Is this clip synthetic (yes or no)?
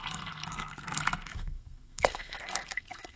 yes